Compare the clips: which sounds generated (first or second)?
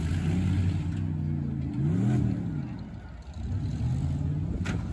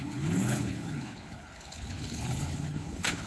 second